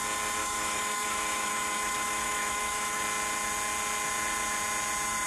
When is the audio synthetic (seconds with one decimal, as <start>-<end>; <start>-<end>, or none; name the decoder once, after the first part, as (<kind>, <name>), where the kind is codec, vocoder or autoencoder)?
0.4-3.0 (autoencoder, DAC-VAE)